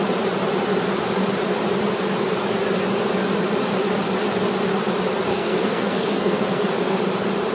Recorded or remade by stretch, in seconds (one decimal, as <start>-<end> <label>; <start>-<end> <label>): 0.0-5.3 recorded; 5.3-7.0 remade; 7.0-7.5 recorded